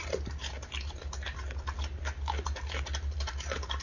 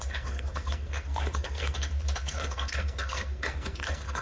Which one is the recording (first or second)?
first